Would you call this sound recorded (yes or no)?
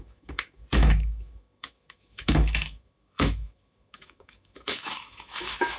no